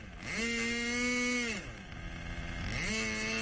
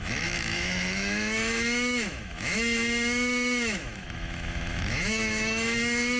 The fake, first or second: second